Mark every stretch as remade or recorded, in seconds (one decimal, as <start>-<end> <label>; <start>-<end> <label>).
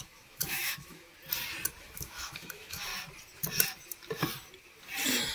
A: 0.0-1.1 remade; 1.1-1.8 recorded; 1.8-2.9 remade; 2.9-5.3 recorded